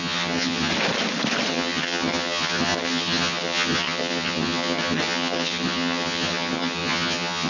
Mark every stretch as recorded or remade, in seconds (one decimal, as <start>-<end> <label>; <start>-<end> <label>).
0.0-0.7 remade; 0.7-1.5 recorded; 1.5-7.5 remade